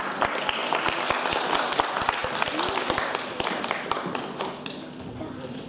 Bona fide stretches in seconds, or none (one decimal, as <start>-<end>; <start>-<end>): 0.0-0.6; 1.6-2.2